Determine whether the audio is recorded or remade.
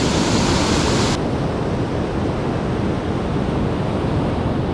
recorded